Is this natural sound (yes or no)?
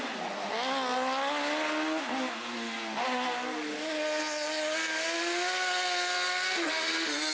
yes